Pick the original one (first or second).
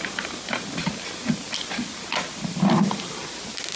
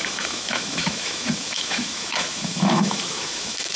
first